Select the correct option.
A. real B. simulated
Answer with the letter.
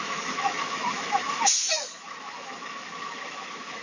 B